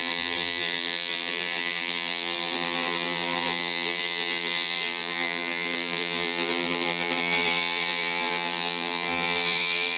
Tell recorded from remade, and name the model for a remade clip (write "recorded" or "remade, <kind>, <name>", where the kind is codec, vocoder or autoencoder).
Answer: remade, vocoder, BigVGAN v2